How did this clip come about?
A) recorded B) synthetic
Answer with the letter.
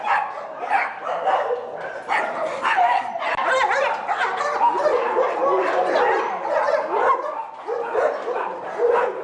A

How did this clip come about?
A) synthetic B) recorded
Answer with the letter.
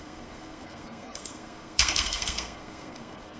A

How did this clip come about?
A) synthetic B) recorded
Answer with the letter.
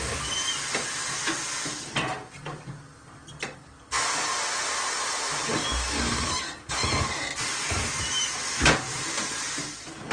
B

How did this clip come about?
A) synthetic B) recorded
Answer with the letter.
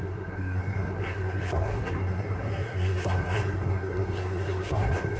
A